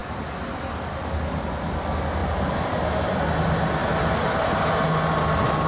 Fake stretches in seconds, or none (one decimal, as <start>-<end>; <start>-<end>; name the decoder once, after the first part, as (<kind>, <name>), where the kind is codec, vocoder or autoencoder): 2.2-3.2 (vocoder, BigVGAN v2)